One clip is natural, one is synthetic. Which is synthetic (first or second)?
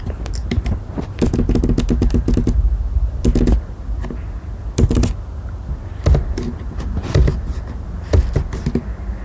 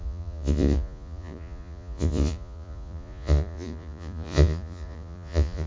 second